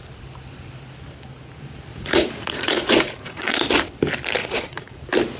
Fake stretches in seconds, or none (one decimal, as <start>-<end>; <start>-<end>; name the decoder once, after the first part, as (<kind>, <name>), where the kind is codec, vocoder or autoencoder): 1.9-3.7 (vocoder, Vocos); 4.4-5.0